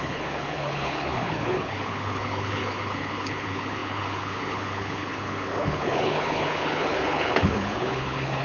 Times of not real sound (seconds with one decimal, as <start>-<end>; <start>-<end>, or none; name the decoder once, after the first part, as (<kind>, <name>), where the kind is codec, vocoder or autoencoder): 0.0-8.4 (codec, HILCodec)